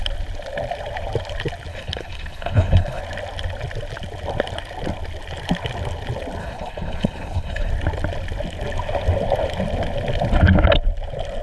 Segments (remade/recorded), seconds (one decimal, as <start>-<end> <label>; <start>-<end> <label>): 0.0-1.7 recorded; 1.7-3.0 remade; 3.0-6.4 recorded; 6.4-7.7 remade; 7.7-11.4 recorded